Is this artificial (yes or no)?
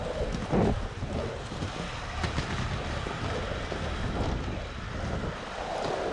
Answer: no